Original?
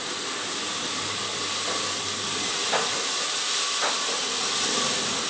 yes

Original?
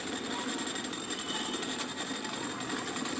yes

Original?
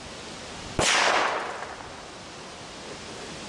yes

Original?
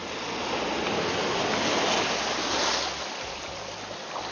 yes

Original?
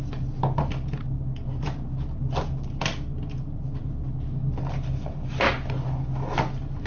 yes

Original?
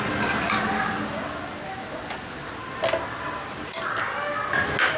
yes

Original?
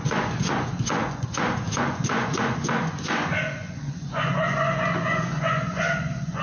no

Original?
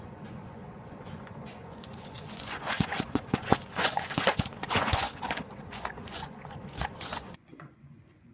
no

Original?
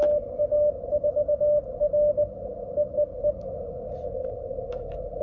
yes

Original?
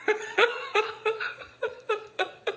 no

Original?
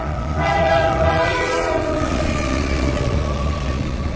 no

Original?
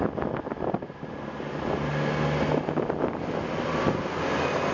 yes